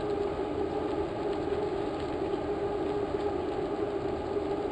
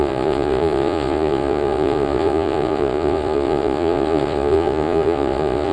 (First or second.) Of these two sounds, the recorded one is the first